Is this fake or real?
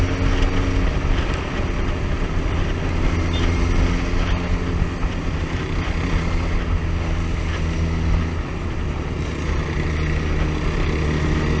real